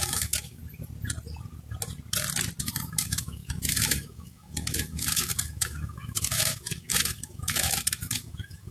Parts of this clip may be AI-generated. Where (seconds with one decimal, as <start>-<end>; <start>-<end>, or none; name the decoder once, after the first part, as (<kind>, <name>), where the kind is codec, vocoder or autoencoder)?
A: 0.0-0.6 (autoencoder, DAC-VAE); 2.6-8.7

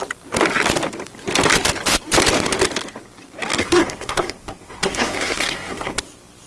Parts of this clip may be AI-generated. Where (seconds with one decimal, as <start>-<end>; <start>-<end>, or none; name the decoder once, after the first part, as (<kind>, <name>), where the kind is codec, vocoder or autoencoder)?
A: 3.6-6.0 (codec, SNAC)

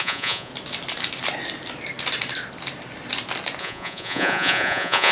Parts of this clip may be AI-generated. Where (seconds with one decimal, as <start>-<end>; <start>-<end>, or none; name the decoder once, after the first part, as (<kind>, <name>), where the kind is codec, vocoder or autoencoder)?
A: 0.0-0.5 (vocoder, Vocos); 3.6-5.1

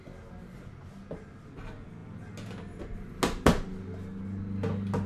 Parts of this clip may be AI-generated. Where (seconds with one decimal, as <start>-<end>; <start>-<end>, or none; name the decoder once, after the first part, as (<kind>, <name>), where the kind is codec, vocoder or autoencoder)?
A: none

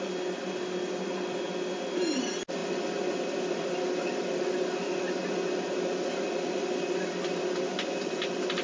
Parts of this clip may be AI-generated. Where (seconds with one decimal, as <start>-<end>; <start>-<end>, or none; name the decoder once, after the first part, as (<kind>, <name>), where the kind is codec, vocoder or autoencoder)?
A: none

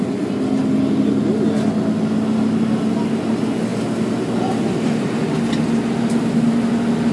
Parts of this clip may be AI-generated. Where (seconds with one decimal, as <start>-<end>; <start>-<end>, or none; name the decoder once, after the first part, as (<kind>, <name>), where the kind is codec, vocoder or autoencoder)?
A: none

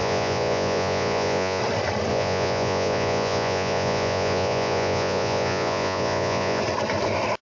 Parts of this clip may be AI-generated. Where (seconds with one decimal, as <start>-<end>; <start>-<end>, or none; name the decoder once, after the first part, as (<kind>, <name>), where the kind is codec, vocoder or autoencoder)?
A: 0.0-1.6 (vocoder, Vocos); 2.1-6.6